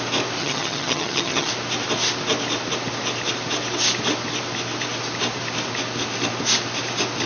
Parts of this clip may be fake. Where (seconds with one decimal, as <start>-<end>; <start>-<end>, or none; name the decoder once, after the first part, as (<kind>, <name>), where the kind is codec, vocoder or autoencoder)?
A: 0.4-1.5 (vocoder, HiFi-GAN)